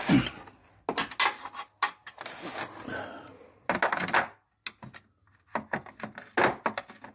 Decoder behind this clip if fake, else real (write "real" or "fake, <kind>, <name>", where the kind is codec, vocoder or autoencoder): real